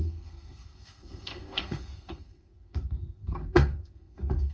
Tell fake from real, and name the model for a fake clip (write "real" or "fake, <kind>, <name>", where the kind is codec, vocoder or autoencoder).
fake, codec, SNAC